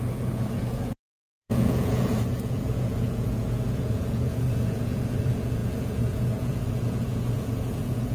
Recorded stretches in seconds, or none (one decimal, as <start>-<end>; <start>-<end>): none